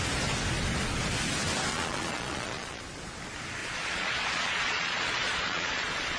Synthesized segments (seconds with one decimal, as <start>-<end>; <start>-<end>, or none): 1.7-2.8; 3.6-6.2